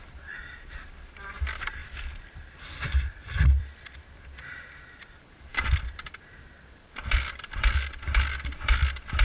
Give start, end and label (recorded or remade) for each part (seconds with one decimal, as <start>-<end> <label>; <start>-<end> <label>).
0.0-1.8 recorded; 1.8-3.6 remade; 3.6-5.5 recorded; 5.5-6.1 remade; 6.1-9.2 recorded